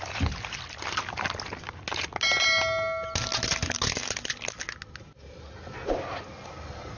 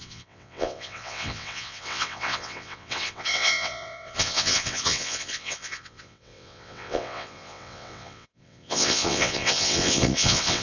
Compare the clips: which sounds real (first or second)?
first